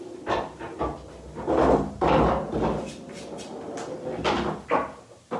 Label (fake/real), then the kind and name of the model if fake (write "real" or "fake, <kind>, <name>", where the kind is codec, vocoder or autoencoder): real